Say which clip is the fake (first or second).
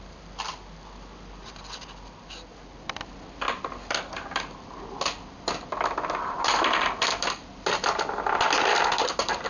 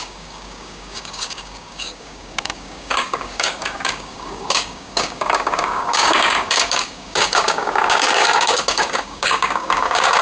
second